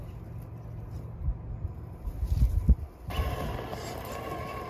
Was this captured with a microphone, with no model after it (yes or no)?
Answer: yes